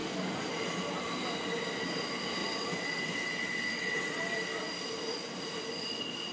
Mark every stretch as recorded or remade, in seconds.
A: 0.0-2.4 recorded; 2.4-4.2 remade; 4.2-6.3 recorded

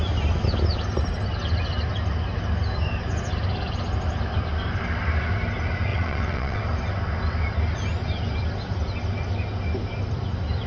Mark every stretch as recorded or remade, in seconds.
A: 0.0-5.9 recorded; 5.9-6.6 remade; 6.6-10.7 recorded